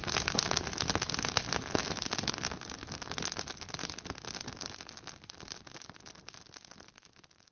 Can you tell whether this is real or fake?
real